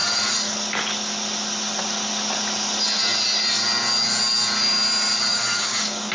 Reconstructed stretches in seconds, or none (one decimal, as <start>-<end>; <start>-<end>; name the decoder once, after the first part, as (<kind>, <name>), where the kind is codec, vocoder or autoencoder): 5.3-6.1 (codec, DAC)